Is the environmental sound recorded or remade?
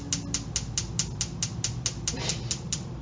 recorded